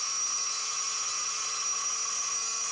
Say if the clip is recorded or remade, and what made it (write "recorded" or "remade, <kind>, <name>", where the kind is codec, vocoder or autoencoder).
recorded